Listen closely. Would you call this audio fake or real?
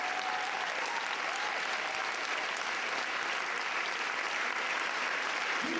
real